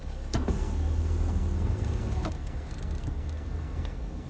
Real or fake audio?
fake